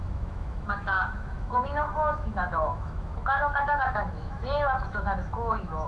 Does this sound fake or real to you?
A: fake